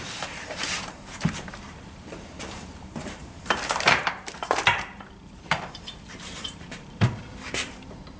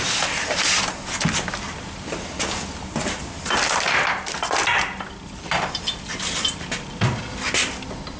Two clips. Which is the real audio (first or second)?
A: second